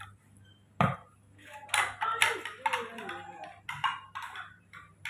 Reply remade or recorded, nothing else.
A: recorded